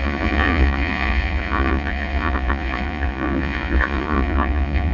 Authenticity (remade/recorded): remade